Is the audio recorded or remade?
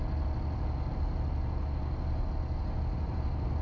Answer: recorded